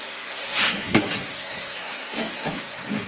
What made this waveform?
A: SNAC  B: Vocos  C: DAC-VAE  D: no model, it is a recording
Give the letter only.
A